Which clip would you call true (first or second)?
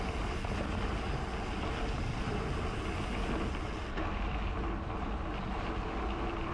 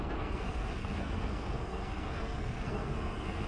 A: first